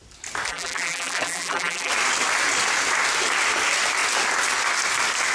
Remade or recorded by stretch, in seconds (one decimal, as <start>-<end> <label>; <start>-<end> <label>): 0.0-0.5 recorded; 0.5-1.9 remade; 1.9-5.3 recorded